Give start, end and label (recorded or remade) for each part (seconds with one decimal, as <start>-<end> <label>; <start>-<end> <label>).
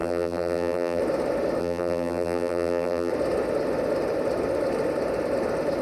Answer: 0.0-1.0 remade; 1.0-1.6 recorded; 1.6-3.1 remade; 3.1-5.8 recorded